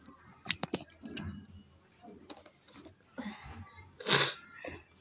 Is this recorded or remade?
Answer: recorded